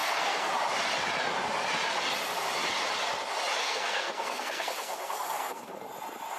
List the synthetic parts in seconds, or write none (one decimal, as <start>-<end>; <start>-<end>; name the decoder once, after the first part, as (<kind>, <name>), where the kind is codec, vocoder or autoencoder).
0.0-0.5 (codec, SNAC); 3.6-5.9